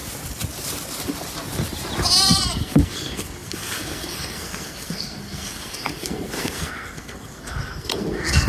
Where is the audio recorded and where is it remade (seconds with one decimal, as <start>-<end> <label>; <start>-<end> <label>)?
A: 0.0-2.2 recorded; 2.2-8.5 remade